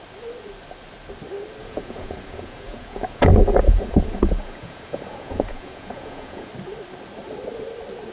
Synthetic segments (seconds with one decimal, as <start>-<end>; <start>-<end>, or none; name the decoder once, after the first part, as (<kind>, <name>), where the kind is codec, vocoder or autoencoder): 1.6-6.5 (vocoder, Vocos)